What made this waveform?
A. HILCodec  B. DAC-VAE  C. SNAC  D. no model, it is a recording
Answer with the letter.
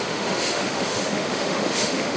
B